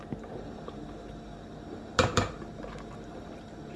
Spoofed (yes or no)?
yes